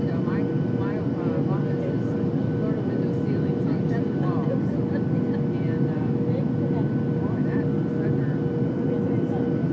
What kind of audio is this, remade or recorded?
recorded